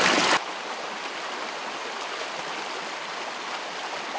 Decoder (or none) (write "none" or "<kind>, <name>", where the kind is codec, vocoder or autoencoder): none